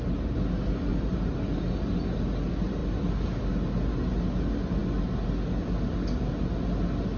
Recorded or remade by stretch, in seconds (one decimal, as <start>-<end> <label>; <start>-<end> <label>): 0.0-0.9 recorded; 0.9-1.6 remade; 1.6-2.8 recorded; 2.8-3.5 remade; 3.5-7.2 recorded